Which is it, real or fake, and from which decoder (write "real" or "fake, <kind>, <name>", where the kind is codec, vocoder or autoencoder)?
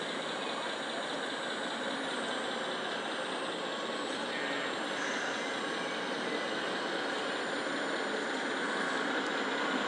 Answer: real